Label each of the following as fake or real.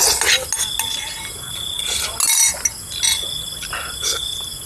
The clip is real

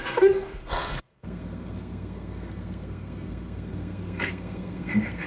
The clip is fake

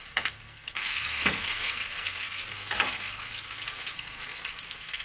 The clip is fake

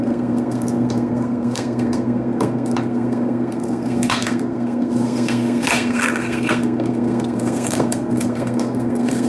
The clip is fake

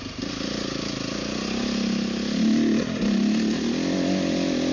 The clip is real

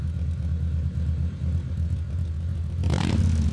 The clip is real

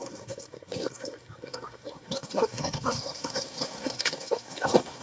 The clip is fake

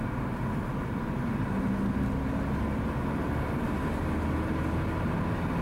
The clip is real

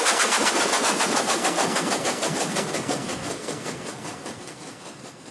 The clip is fake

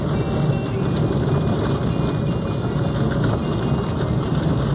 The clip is real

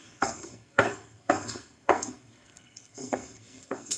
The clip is fake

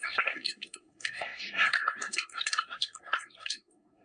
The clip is fake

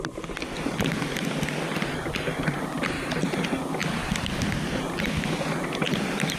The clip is real